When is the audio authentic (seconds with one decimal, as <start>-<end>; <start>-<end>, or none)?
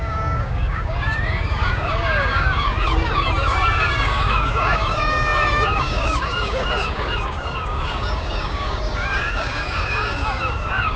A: none